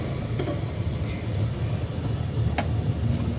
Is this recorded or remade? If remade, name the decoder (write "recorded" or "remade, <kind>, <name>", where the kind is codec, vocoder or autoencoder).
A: recorded